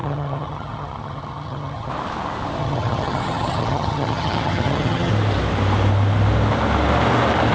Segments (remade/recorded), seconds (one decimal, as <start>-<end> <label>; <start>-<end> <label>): 0.0-1.9 remade; 1.9-2.6 recorded; 2.6-5.1 remade; 5.1-7.5 recorded